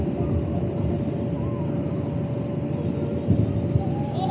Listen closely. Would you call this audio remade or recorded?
recorded